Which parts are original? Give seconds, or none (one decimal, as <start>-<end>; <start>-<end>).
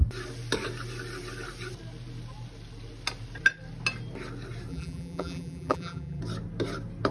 0.0-4.7; 6.2-7.1